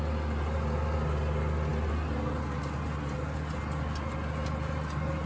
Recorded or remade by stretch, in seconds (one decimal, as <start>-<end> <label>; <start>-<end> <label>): 0.0-5.3 recorded